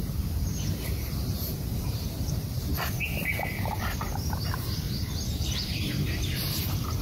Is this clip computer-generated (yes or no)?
yes